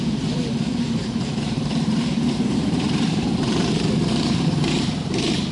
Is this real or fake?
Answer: fake